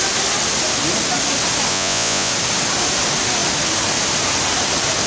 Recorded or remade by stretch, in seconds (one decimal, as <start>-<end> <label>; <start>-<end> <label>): 0.0-1.7 recorded; 1.7-2.3 remade; 2.3-5.1 recorded